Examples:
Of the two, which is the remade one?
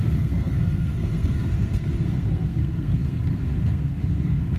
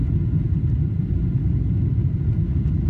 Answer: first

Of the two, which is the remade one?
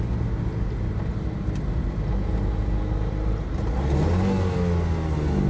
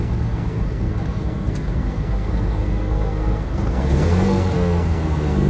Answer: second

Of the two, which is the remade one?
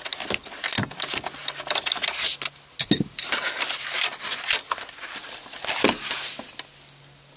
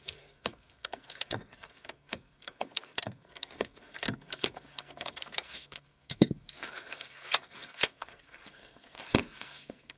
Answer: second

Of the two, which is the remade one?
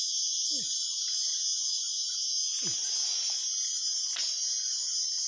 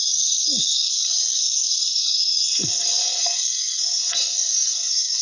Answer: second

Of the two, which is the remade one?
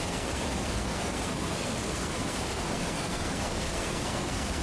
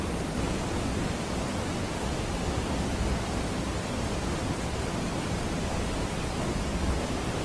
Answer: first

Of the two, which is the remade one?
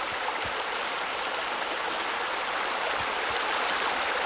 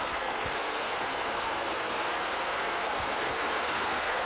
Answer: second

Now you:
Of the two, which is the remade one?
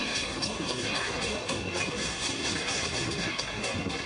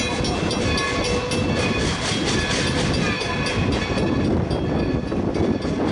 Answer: first